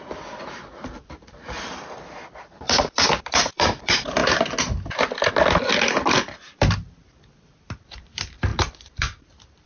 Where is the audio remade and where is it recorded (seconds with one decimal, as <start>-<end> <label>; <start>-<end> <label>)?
0.0-4.2 remade; 4.2-5.3 recorded; 5.3-9.7 remade